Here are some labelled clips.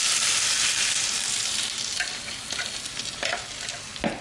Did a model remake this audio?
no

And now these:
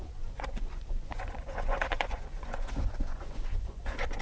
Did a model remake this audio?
yes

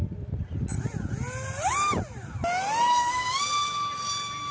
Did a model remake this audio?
no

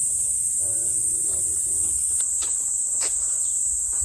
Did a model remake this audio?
yes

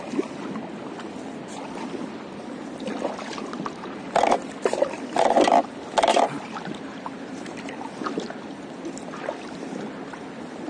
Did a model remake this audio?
no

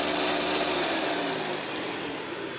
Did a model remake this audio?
yes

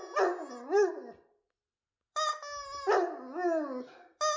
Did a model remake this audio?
no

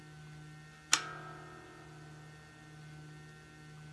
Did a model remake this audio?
no